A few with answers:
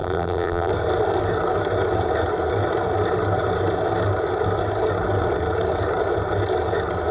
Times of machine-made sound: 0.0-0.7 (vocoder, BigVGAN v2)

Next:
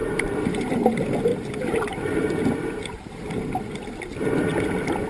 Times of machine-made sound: 0.0-0.7 (vocoder, BigVGAN v2); 1.3-3.3

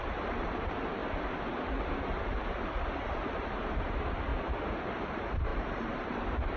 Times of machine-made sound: 0.0-1.0 (vocoder, BigVGAN v2); 2.0-4.3; 5.1-6.6

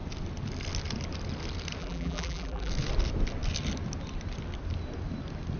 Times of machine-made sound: 1.8-2.7 (vocoder, BigVGAN v2)